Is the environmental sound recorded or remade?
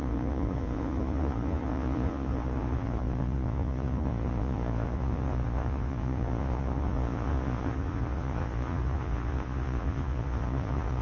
remade